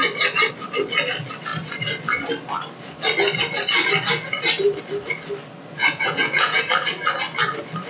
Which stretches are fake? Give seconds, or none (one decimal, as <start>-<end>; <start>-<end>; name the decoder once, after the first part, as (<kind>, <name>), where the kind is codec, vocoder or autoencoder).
5.8-6.6 (vocoder, Vocos)